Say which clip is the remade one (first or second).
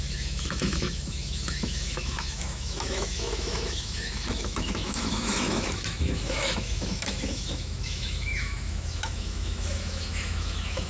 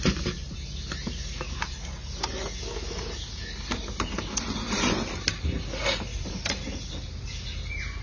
first